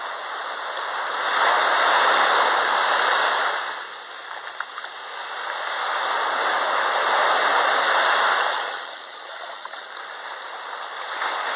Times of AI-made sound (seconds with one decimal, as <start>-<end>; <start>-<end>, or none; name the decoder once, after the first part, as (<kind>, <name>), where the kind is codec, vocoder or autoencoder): 8.5-9.9 (vocoder, HiFi-GAN)